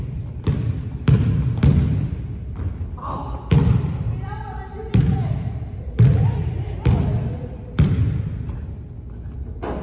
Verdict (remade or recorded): recorded